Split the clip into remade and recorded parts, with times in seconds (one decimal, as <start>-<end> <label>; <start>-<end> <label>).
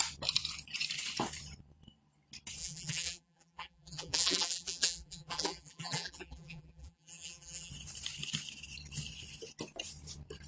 0.0-2.6 recorded; 2.6-7.7 remade; 7.7-10.5 recorded